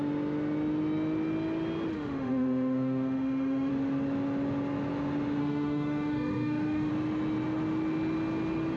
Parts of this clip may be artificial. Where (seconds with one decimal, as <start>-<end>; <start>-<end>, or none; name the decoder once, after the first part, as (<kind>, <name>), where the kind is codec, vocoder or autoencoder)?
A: 1.9-3.7 (autoencoder, DAC-VAE); 5.4-6.9